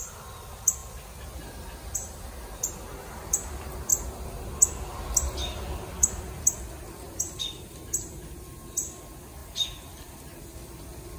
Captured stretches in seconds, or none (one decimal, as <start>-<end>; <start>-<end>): 0.0-9.4; 10.1-11.2